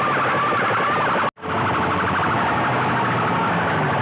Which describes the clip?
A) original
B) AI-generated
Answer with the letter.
A